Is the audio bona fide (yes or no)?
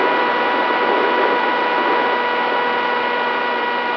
yes